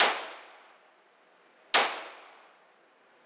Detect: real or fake real